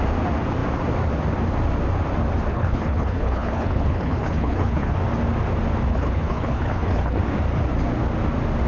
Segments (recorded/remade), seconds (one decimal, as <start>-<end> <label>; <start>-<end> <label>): 0.0-2.5 recorded; 2.5-4.9 remade; 4.9-5.9 recorded; 5.9-7.2 remade; 7.2-8.7 recorded